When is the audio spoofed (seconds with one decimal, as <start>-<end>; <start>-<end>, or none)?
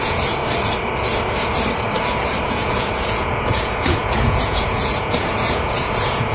0.0-0.4; 2.4-6.3